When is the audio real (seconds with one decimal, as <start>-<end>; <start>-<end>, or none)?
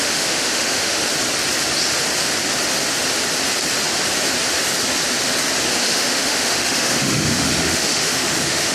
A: 1.0-5.8